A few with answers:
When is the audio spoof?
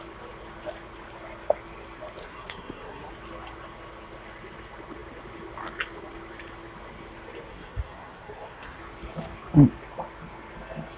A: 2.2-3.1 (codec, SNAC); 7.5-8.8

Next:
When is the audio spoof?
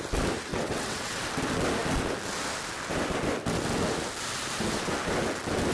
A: 0.5-1.2 (vocoder, WaveNeXt)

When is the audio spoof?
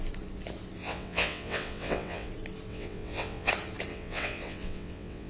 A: 0.8-2.3 (vocoder, WaveNeXt); 2.7-3.5; 3.9-5.3